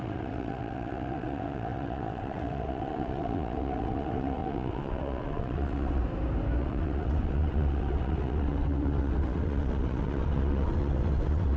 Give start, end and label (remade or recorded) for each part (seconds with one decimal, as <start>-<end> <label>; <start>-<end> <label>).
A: 0.0-6.0 remade; 6.0-6.6 recorded; 6.6-11.6 remade